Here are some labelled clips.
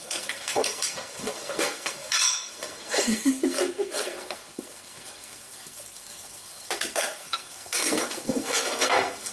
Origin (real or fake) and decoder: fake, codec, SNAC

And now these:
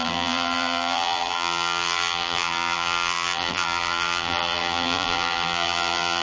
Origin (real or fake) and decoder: fake, vocoder, BigVGAN v2